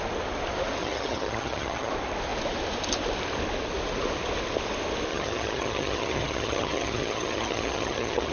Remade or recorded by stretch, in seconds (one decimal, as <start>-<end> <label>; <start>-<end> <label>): 0.0-0.8 recorded; 0.8-1.9 remade; 1.9-5.1 recorded; 5.1-8.3 remade